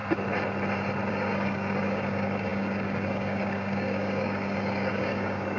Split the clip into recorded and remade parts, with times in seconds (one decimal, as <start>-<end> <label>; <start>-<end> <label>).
0.0-1.1 recorded; 1.1-5.6 remade